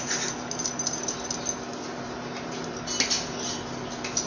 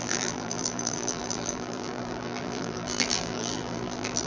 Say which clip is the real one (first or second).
first